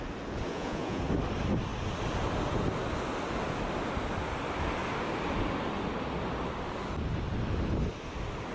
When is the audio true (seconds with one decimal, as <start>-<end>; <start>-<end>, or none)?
0.0-0.5; 1.0-8.5